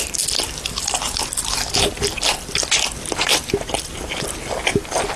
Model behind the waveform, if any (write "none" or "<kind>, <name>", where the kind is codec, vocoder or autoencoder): none